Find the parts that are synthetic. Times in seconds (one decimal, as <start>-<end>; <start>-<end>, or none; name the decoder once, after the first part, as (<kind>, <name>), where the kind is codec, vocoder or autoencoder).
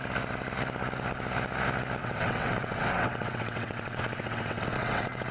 2.0-5.3 (vocoder, WaveNeXt)